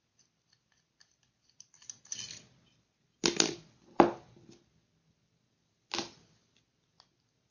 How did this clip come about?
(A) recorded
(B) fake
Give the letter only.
A